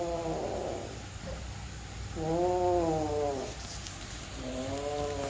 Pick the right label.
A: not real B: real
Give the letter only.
B